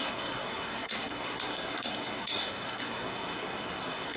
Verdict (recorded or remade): remade